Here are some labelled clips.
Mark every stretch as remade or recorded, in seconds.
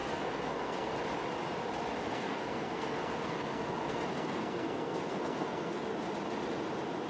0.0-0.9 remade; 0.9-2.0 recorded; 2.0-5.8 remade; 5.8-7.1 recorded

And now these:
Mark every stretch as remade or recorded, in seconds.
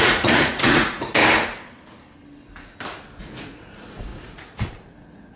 0.0-1.2 remade; 1.2-3.2 recorded; 3.2-5.4 remade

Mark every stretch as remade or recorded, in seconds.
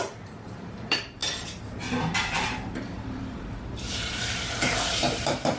0.0-1.2 remade; 1.2-1.9 recorded; 1.9-5.6 remade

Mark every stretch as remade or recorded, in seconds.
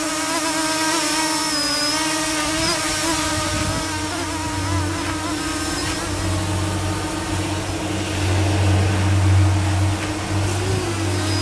0.0-11.4 recorded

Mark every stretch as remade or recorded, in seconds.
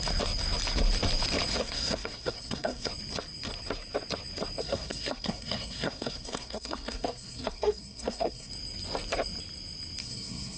0.0-1.5 recorded; 1.5-2.9 remade; 2.9-4.6 recorded; 4.6-8.5 remade; 8.5-10.0 recorded; 10.0-10.6 remade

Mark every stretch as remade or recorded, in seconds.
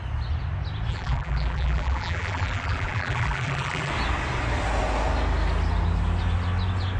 0.0-0.9 recorded; 0.9-3.9 remade; 3.9-7.0 recorded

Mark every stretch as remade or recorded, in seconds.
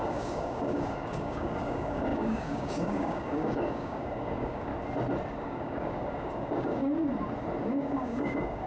0.0-4.7 remade; 4.7-5.4 recorded; 5.4-7.1 remade; 7.1-7.6 recorded; 7.6-8.7 remade